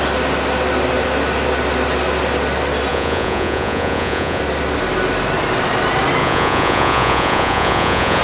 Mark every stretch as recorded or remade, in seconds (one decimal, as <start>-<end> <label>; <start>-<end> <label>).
0.0-2.9 recorded; 2.9-4.4 remade; 4.4-6.2 recorded; 6.2-8.2 remade